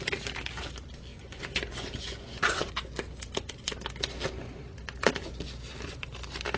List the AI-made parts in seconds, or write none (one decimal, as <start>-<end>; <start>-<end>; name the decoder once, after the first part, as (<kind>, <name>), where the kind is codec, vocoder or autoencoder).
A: 1.1-2.7 (vocoder, Vocos)

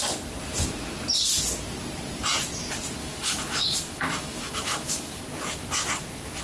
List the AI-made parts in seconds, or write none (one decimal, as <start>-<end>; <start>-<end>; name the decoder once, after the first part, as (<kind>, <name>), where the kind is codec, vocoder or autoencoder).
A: 3.0-5.2 (autoencoder, DAC-VAE)

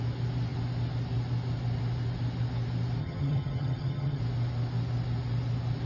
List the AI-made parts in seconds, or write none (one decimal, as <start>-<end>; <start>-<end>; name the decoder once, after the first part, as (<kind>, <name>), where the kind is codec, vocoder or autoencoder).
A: 3.0-4.2 (vocoder, HiFi-GAN)